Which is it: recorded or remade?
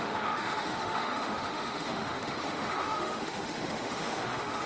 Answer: remade